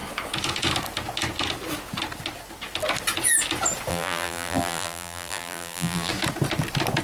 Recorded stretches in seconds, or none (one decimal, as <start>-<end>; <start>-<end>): 0.0-3.9; 6.1-7.0